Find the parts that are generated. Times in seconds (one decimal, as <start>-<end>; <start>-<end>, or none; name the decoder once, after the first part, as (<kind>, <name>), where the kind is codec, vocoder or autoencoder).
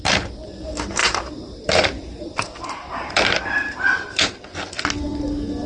1.0-4.4 (vocoder, BigVGAN v2)